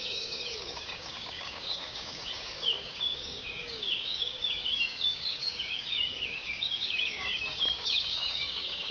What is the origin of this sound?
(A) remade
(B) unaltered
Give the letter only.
A